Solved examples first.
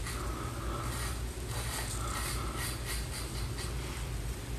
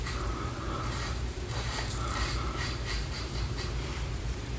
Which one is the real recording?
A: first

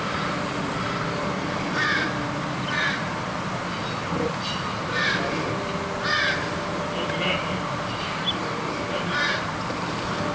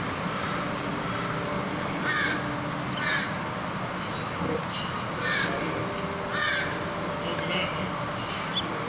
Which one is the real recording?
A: second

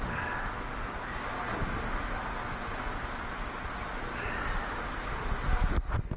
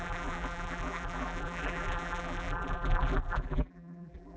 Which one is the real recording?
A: first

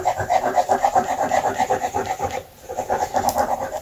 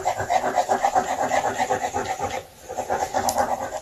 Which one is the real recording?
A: second